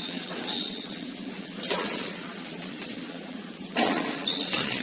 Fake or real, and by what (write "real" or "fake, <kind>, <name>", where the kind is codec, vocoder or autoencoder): fake, vocoder, Vocos